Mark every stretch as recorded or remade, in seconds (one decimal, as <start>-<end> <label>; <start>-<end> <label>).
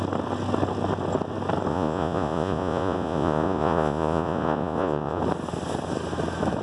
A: 0.0-1.7 recorded; 1.7-5.2 remade; 5.2-6.6 recorded